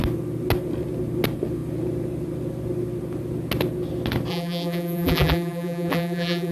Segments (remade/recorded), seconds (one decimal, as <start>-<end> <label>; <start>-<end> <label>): 0.0-4.3 recorded; 4.3-6.5 remade